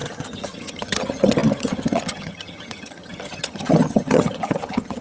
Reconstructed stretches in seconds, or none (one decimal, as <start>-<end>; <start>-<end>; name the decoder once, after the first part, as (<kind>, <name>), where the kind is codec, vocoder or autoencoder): 0.0-5.0 (vocoder, HiFi-GAN)